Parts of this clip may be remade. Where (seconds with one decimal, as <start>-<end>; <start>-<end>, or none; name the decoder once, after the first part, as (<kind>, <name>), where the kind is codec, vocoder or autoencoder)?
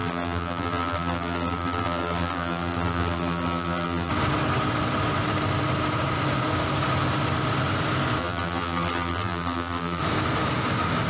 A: 0.0-4.1 (vocoder, BigVGAN v2); 8.2-10.0